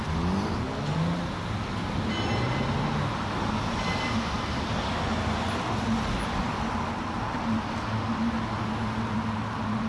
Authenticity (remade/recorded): recorded